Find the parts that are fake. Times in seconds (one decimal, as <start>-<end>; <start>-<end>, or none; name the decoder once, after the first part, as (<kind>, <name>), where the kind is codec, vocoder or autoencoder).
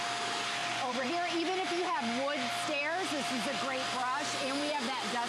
0.6-1.1 (vocoder, Vocos)